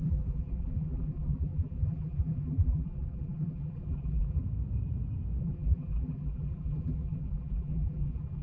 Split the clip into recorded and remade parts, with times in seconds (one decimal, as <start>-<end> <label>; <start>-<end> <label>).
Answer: 0.0-4.4 remade; 4.4-5.4 recorded; 5.4-8.4 remade